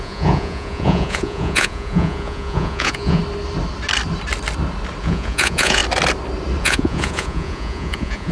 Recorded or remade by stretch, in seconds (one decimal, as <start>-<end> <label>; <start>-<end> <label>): 0.0-3.2 remade; 3.2-5.0 recorded; 5.0-5.8 remade; 5.8-6.6 recorded; 6.6-8.3 remade